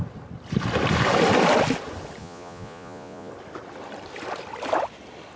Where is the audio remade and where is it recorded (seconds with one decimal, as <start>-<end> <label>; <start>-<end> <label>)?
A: 0.0-2.2 recorded; 2.2-3.3 remade; 3.3-5.4 recorded